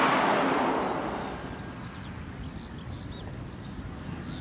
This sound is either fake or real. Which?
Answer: real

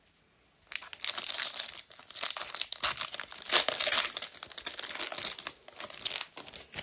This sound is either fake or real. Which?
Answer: real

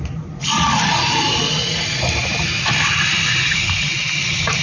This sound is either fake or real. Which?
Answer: real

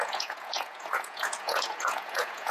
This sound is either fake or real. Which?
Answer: fake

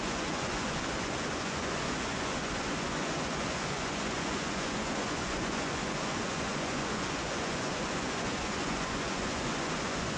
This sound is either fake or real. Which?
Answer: fake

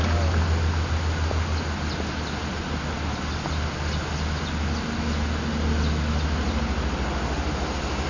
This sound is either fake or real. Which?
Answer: real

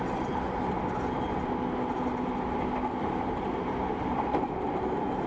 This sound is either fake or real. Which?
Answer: real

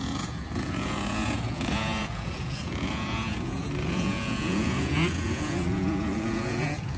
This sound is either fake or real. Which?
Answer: fake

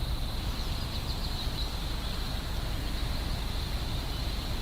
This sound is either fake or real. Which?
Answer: real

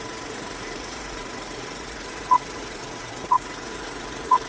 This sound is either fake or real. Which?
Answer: fake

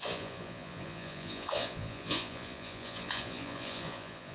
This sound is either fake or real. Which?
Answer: fake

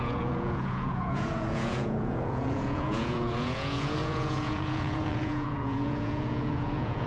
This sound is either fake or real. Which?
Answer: fake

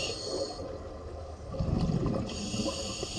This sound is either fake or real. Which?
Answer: real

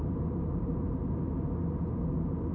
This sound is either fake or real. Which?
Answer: real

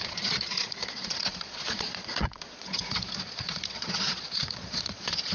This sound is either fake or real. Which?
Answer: fake